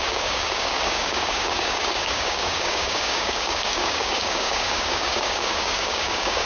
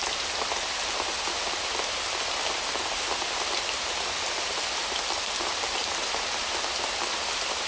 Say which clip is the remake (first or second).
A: first